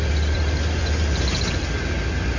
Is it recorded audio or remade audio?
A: remade